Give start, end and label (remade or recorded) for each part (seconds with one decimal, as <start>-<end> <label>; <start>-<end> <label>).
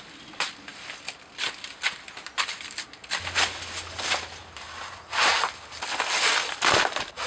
0.0-7.3 recorded